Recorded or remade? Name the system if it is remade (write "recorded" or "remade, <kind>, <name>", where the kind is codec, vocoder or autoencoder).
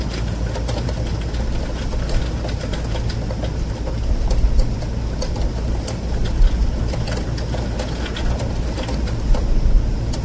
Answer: recorded